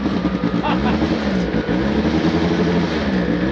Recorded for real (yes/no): yes